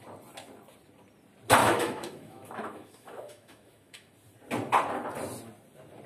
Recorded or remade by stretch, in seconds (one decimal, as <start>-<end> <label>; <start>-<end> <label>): 0.0-1.6 recorded; 1.6-4.1 remade; 4.1-6.1 recorded